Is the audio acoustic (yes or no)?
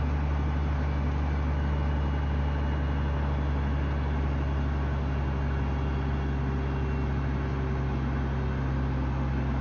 yes